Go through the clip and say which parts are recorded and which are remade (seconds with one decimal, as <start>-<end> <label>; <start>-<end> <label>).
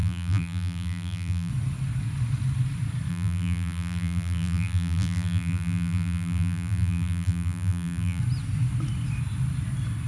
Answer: 0.0-1.5 remade; 1.5-3.1 recorded; 3.1-8.2 remade; 8.2-10.1 recorded